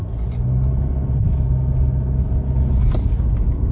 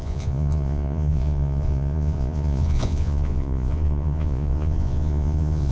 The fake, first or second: second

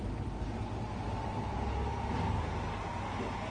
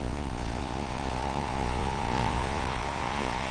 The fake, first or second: second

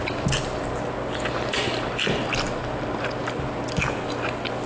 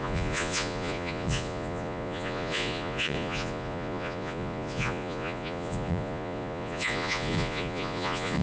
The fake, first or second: second